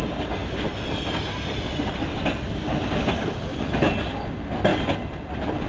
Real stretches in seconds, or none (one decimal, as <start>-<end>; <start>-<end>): 0.0-5.7